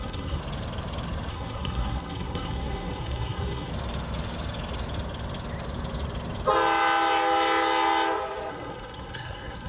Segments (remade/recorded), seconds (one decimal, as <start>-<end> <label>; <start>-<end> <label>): 0.0-0.4 remade; 0.4-1.3 recorded; 1.3-3.7 remade; 3.7-8.5 recorded; 8.5-9.7 remade